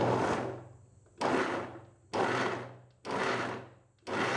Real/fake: real